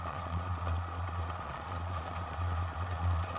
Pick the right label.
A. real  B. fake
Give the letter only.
B